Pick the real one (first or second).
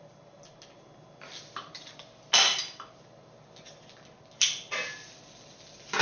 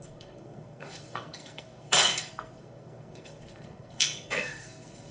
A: first